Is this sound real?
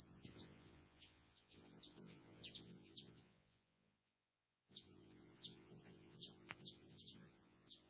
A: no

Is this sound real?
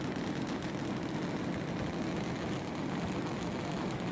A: yes